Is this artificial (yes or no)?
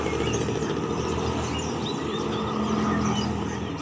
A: no